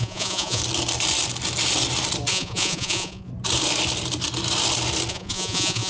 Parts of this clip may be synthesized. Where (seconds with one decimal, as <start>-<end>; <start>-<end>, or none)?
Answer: 0.0-0.6; 2.3-3.3; 5.1-5.9